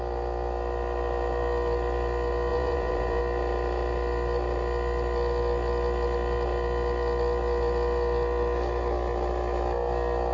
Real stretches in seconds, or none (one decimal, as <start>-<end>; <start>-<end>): 0.0-2.5; 3.2-10.3